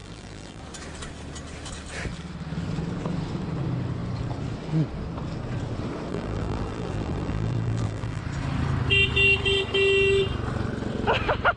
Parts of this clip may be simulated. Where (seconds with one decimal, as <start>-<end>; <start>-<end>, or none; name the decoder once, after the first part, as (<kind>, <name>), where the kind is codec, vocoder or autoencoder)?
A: 0.0-0.6 (vocoder, BigVGAN v2); 6.1-8.2